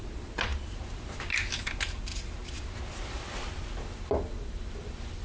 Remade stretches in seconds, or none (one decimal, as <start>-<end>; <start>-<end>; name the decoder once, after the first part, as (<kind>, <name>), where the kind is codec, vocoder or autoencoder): none